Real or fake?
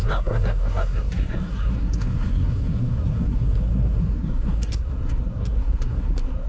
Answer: fake